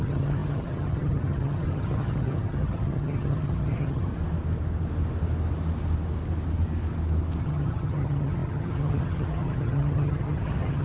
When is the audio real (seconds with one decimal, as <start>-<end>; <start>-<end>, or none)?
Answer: 4.1-7.4